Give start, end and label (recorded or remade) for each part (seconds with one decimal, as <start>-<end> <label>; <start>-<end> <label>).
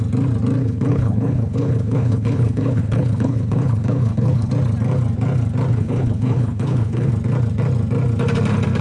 0.0-0.6 recorded; 0.6-4.5 remade; 4.5-5.7 recorded; 5.7-7.1 remade; 7.1-8.8 recorded